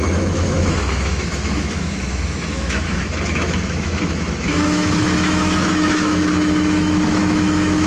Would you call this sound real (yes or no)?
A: no